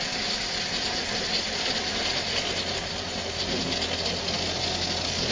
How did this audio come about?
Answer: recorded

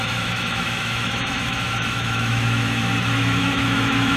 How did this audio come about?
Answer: remade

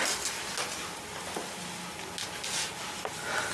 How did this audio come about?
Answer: recorded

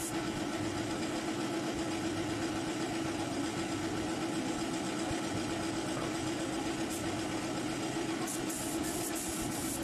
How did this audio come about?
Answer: recorded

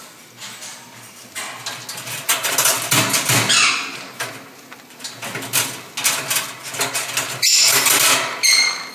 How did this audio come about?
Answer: recorded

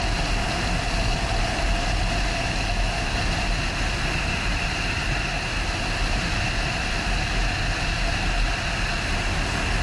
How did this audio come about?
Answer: recorded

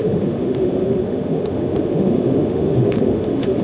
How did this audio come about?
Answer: remade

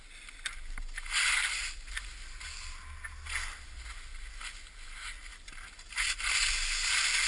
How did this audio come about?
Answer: recorded